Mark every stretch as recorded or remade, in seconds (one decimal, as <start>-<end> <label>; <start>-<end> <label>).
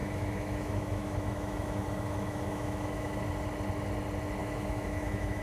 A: 0.0-3.2 remade; 3.2-4.4 recorded; 4.4-5.4 remade